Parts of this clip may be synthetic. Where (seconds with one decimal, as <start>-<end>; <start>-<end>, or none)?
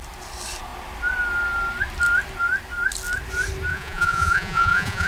3.7-5.1